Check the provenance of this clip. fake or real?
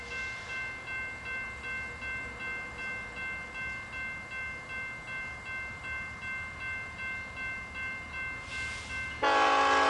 real